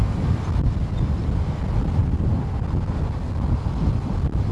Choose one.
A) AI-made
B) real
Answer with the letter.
B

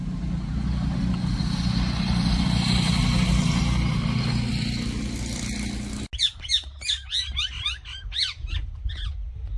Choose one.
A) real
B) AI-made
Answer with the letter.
A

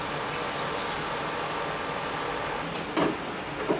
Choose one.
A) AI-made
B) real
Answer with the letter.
B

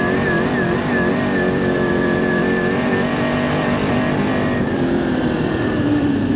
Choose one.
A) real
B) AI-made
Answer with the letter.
B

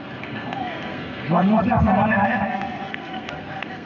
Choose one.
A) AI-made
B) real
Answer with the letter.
A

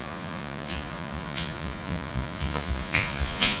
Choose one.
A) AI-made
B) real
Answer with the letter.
A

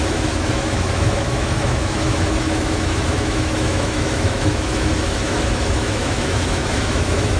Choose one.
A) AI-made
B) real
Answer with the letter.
A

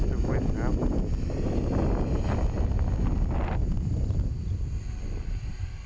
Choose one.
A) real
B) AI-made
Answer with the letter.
A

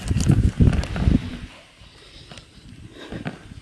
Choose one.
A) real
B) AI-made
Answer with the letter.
A